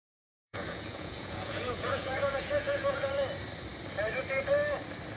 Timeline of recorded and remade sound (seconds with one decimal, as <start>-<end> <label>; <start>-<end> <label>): 0.0-3.1 remade; 3.1-5.2 recorded